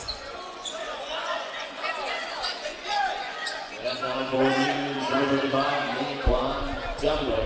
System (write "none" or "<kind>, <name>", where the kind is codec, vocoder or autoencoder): vocoder, Vocos